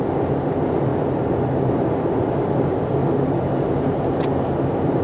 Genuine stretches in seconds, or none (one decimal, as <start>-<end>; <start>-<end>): 0.0-5.0